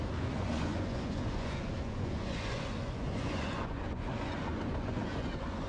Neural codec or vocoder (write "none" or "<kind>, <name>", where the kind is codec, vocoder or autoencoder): vocoder, Vocos